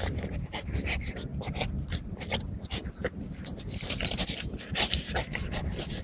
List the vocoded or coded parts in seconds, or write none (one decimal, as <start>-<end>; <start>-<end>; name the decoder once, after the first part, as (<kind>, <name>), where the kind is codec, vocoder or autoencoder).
0.0-1.3 (vocoder, BigVGAN v2); 2.4-6.0